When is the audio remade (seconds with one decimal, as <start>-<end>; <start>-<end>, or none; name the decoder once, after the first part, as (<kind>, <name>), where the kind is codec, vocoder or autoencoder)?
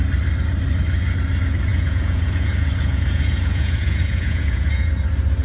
1.7-4.9 (vocoder, Vocos)